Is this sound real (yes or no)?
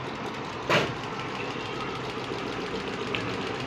yes